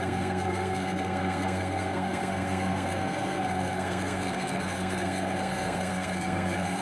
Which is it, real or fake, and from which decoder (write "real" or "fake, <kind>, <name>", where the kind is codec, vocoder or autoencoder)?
fake, codec, SNAC